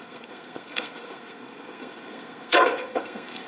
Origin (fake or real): fake